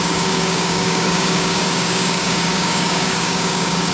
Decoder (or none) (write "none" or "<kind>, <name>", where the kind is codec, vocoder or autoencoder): codec, DAC